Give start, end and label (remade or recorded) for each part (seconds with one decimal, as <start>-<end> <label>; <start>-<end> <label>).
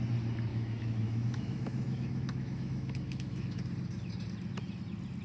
0.0-0.5 recorded; 0.5-3.6 remade; 3.6-5.2 recorded